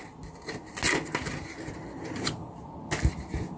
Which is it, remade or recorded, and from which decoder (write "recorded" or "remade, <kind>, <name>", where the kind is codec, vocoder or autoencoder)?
recorded